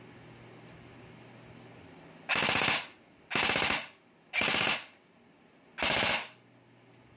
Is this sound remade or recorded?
recorded